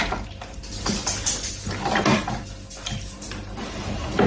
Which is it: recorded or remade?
recorded